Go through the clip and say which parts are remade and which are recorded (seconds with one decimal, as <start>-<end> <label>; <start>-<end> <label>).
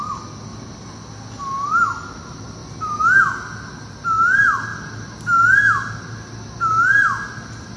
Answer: 0.0-7.8 recorded